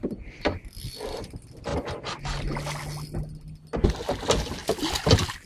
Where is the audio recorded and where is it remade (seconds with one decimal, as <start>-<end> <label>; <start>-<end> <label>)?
0.0-5.5 recorded